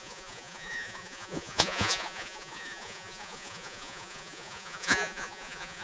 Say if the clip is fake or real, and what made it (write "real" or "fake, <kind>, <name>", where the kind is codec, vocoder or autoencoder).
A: fake, vocoder, Vocos